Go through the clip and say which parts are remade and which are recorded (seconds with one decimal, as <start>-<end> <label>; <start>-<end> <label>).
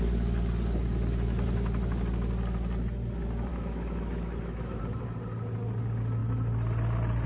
0.0-3.5 recorded; 3.5-4.8 remade; 4.8-7.3 recorded